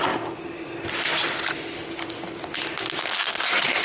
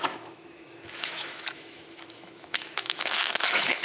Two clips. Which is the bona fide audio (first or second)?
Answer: first